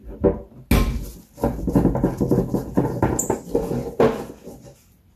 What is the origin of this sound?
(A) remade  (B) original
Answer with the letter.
B